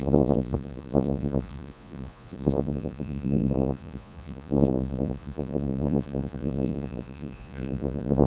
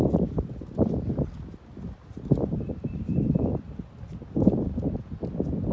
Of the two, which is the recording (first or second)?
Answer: second